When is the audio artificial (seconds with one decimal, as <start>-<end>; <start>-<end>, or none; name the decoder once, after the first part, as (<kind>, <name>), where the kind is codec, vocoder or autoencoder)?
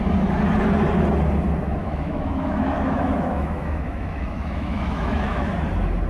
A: 1.8-5.5 (autoencoder, DAC-VAE)